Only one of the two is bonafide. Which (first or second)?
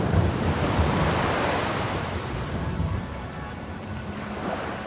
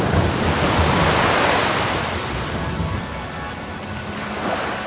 second